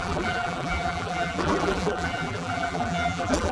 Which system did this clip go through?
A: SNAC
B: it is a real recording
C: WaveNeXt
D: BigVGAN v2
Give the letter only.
D